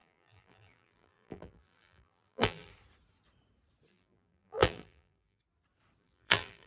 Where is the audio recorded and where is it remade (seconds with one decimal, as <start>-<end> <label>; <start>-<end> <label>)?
0.0-2.7 remade; 2.7-3.9 recorded; 3.9-5.4 remade; 5.4-6.0 recorded; 6.0-6.7 remade